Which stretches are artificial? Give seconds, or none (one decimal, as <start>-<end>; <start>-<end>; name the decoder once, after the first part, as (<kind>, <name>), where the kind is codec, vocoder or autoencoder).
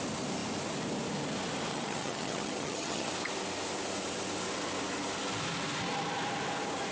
1.7-3.1 (vocoder, HiFi-GAN)